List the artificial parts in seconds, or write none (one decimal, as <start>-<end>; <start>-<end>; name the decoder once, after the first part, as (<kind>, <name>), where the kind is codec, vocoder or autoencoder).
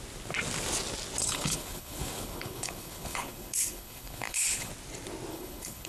1.2-4.7 (codec, HILCodec); 5.3-5.9